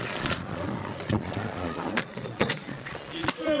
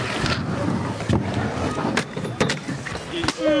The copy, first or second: first